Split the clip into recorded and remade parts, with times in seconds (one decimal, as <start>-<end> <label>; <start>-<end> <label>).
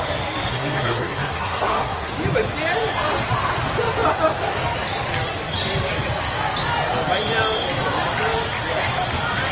0.0-0.5 recorded; 0.5-2.1 remade; 2.1-9.5 recorded